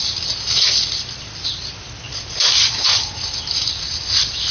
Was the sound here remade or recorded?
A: recorded